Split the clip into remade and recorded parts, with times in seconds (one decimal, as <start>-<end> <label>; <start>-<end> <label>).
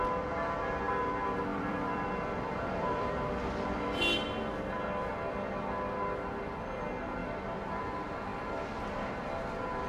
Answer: 0.0-1.5 recorded; 1.5-3.3 remade; 3.3-7.2 recorded; 7.2-7.8 remade; 7.8-8.3 recorded; 8.3-9.4 remade; 9.4-9.9 recorded